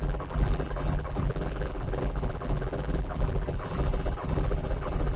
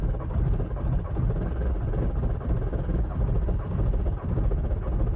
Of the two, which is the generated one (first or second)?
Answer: first